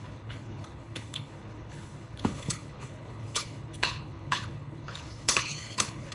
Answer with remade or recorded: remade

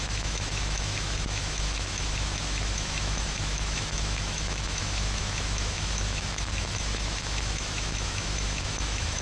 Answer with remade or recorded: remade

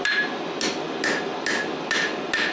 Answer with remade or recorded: recorded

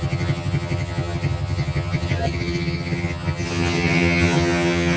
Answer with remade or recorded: remade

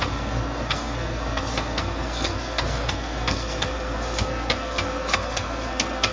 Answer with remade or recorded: remade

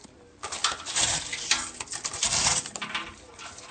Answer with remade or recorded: recorded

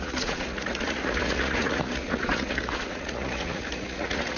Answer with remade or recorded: remade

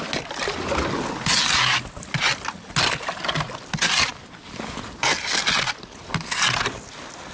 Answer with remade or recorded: recorded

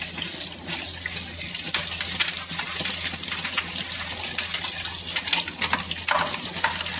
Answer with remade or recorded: recorded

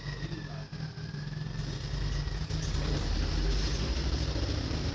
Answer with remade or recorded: recorded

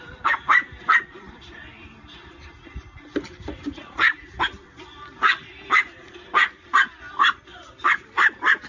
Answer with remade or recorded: remade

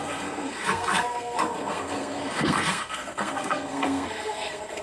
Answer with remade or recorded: remade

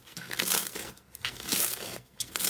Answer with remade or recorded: remade